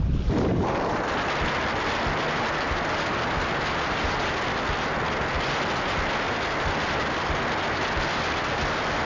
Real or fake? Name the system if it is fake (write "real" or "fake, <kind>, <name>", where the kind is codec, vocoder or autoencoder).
real